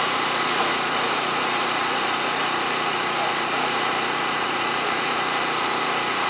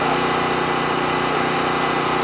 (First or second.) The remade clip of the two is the first